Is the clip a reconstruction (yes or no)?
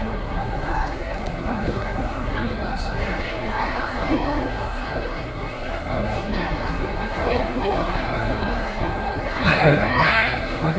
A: yes